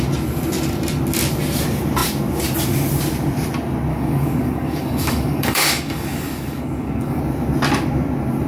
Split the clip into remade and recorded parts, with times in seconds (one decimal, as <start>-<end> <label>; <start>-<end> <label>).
0.0-3.9 recorded; 3.9-7.2 remade; 7.2-8.5 recorded